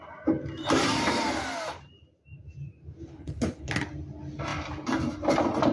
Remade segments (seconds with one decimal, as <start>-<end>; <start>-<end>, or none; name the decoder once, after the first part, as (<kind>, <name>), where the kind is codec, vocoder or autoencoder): 3.1-3.7 (codec, HILCodec)